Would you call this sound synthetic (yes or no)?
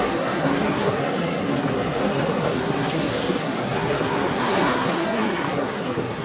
yes